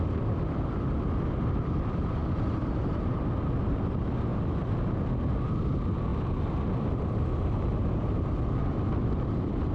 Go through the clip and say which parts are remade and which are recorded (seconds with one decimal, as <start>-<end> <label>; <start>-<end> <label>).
0.0-4.3 remade; 4.3-5.4 recorded; 5.4-6.1 remade; 6.1-6.9 recorded; 6.9-9.7 remade

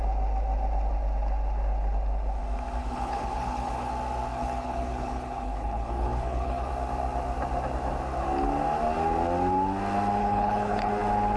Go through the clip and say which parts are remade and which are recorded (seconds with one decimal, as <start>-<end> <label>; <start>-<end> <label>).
0.0-2.8 recorded; 2.8-3.9 remade; 3.9-4.3 recorded; 4.3-6.7 remade; 6.7-10.2 recorded; 10.2-10.9 remade; 10.9-11.4 recorded

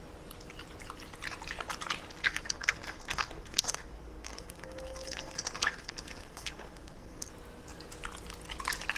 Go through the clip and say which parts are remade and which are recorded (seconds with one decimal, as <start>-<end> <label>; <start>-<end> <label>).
0.0-2.2 recorded; 2.2-7.3 remade; 7.3-9.0 recorded

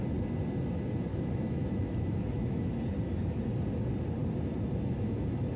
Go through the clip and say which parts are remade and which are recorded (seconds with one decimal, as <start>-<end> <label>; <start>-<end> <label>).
0.0-1.1 recorded; 1.1-2.7 remade; 2.7-5.6 recorded